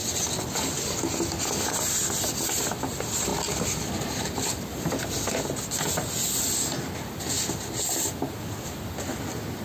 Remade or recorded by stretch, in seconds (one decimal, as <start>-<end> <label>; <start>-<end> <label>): 0.0-9.6 recorded